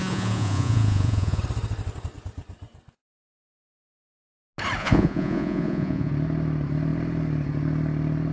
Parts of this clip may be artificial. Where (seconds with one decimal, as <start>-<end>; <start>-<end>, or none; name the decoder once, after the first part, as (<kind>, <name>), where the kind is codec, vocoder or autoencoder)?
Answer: 0.0-1.4 (vocoder, Vocos); 4.8-6.1